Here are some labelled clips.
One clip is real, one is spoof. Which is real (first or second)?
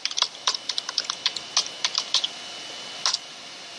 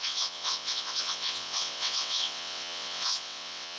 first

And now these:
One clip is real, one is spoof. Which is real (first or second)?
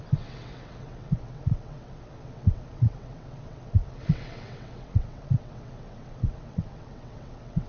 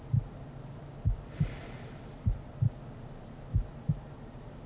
second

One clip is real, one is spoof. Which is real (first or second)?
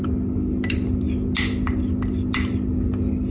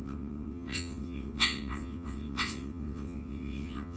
first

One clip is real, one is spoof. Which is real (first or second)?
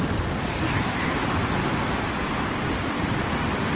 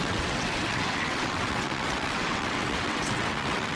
first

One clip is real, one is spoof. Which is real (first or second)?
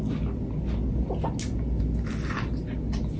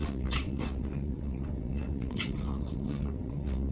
first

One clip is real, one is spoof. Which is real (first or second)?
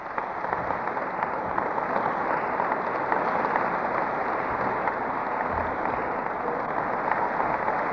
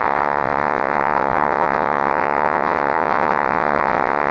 first